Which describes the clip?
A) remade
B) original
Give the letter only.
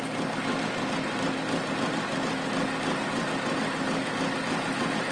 B